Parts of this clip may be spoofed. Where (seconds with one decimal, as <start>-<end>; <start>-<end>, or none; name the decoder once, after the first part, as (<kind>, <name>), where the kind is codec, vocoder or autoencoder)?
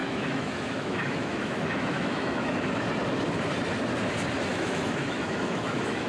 0.0-2.6 (autoencoder, DAC-VAE); 4.5-6.1